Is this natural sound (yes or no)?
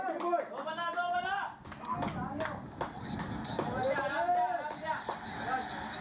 yes